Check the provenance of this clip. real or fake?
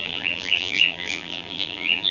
fake